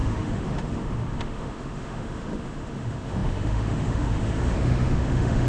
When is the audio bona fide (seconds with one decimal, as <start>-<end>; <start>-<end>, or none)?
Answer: none